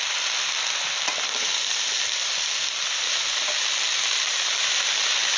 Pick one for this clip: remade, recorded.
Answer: remade